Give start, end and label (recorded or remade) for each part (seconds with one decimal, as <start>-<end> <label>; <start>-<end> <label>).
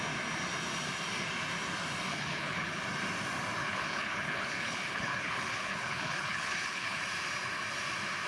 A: 0.0-2.1 recorded; 2.1-2.8 remade; 2.8-3.6 recorded; 3.6-7.0 remade; 7.0-8.3 recorded